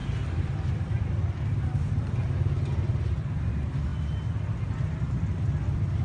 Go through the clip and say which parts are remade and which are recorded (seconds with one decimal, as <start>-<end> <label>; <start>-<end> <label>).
0.0-6.0 recorded